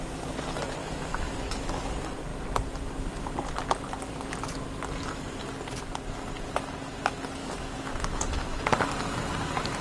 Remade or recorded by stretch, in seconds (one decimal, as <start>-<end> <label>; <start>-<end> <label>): 0.0-0.8 recorded; 0.8-1.9 remade; 1.9-7.4 recorded; 7.4-8.6 remade; 8.6-9.8 recorded